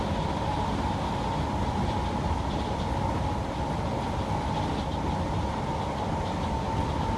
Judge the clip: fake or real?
real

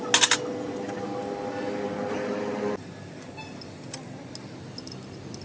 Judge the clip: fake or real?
real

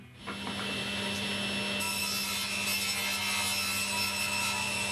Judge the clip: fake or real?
real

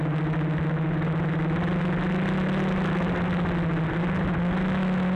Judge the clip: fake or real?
real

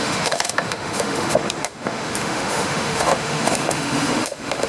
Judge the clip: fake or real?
fake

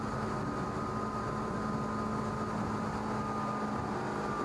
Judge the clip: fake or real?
real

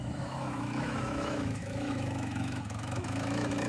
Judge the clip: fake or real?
fake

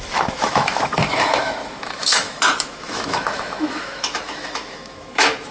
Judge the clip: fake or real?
fake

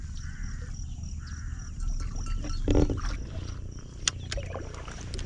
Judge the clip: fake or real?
real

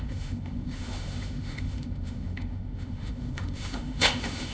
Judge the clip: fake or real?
fake